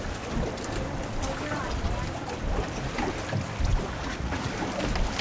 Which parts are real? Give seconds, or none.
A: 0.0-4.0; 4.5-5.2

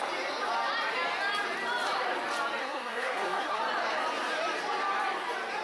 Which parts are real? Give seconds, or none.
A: 0.0-2.6; 3.6-5.6

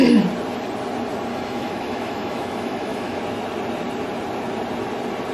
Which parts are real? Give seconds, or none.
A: 0.0-1.3; 3.2-5.3

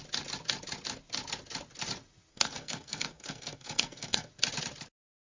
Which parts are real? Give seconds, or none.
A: 0.0-2.3; 4.3-5.4

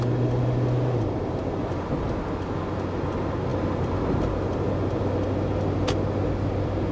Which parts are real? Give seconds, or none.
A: 0.0-6.9

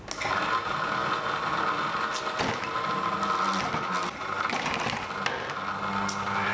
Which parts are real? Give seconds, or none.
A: 0.0-6.5

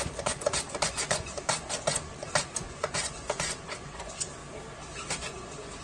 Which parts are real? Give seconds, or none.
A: 4.4-5.2